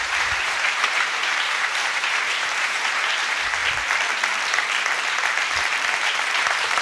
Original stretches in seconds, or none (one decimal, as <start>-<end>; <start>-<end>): 3.6-6.0